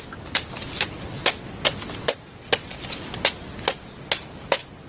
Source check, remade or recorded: recorded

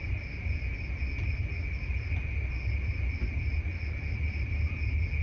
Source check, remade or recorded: recorded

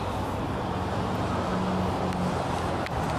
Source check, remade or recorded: recorded